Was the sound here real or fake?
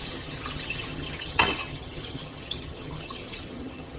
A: fake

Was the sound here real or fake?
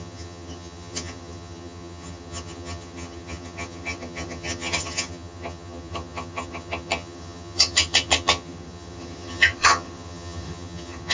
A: fake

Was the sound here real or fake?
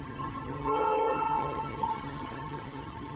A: fake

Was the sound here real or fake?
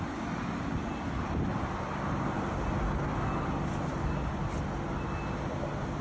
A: real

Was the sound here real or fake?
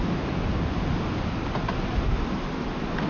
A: real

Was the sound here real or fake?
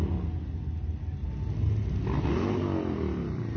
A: real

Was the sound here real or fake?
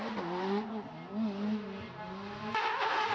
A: real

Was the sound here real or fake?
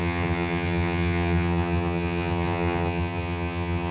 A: fake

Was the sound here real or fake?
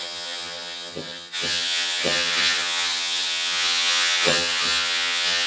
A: fake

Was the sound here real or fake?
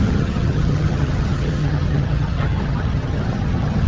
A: fake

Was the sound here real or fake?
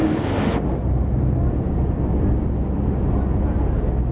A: real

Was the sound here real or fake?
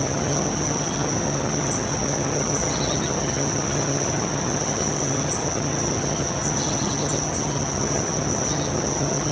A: fake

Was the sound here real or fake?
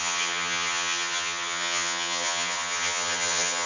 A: fake